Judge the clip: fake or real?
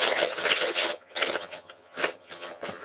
fake